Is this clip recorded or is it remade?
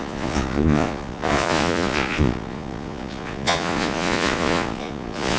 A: remade